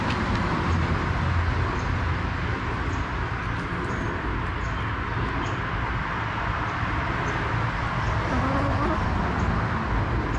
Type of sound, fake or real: real